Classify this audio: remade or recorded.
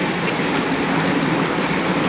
recorded